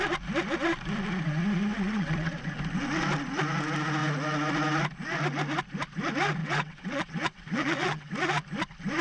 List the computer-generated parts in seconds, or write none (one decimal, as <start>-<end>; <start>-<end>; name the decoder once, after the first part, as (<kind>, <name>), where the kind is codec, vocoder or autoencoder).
1.7-2.3 (vocoder, WaveNeXt); 6.4-8.1